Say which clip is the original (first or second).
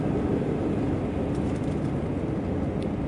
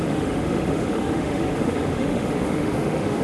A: first